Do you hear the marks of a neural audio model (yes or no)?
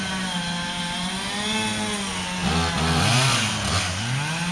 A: no